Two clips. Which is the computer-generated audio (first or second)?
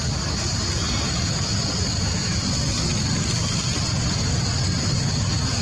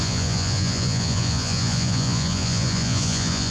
second